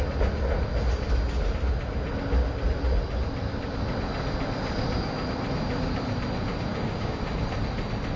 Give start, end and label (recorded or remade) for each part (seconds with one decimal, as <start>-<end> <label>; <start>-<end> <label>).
0.0-6.7 recorded; 6.7-7.3 remade; 7.3-8.2 recorded